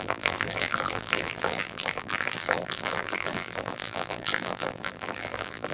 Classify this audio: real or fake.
fake